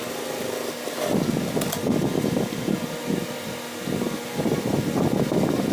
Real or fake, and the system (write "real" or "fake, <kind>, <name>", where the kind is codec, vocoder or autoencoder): real